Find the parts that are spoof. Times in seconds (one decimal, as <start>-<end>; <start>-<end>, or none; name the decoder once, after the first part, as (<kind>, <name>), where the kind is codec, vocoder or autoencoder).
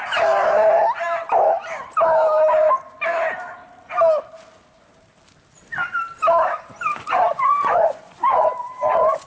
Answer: 6.9-9.3 (vocoder, Vocos)